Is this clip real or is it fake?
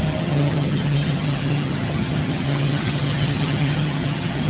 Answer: fake